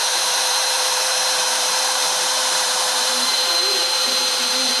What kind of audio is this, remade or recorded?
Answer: remade